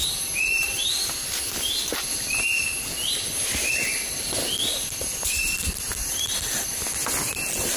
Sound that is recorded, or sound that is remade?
recorded